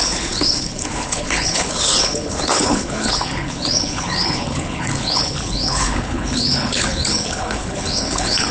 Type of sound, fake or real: fake